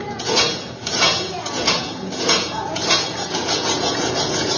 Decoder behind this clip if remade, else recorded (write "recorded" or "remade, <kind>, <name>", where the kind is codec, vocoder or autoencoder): remade, vocoder, Vocos